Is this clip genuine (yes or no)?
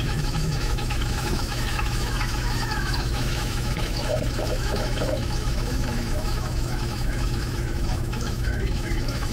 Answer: no